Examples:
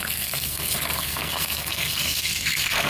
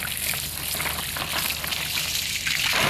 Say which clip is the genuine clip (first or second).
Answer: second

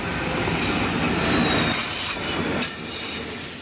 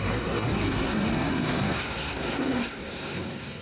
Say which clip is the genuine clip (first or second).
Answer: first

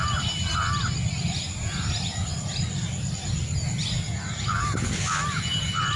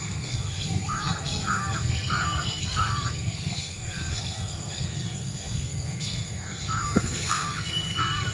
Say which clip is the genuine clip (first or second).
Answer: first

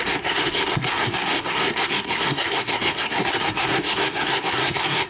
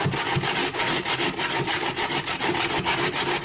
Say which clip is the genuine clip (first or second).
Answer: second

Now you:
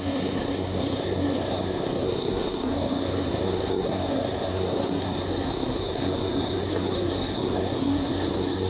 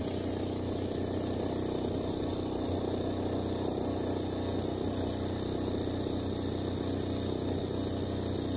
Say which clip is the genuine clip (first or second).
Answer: second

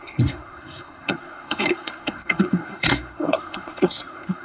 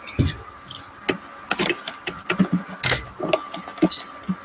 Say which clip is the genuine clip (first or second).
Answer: second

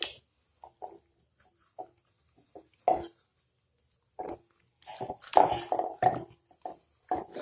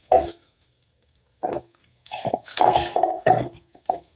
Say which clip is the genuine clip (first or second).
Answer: first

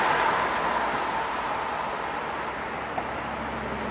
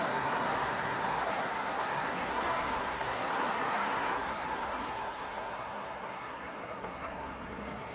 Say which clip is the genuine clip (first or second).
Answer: first